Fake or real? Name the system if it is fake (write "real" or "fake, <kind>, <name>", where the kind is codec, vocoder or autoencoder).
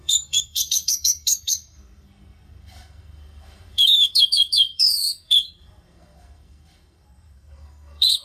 fake, codec, SNAC